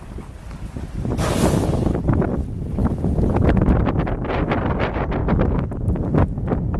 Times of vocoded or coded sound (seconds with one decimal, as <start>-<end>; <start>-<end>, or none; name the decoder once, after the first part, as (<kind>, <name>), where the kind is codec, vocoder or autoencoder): 2.8-3.6 (vocoder, Vocos)